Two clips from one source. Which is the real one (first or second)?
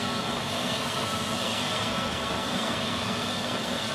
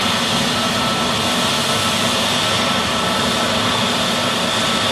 second